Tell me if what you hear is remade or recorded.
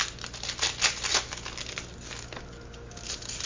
recorded